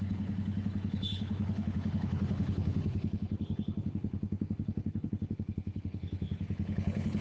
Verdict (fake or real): fake